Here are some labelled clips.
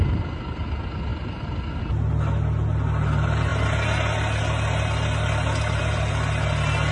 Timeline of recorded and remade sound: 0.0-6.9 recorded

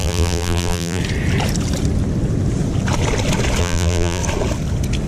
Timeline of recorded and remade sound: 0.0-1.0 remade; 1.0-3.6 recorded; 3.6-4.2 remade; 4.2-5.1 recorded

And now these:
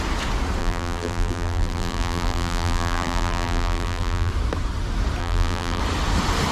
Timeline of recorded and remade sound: 0.0-0.6 recorded; 0.6-4.3 remade; 4.3-5.2 recorded; 5.2-5.8 remade; 5.8-6.5 recorded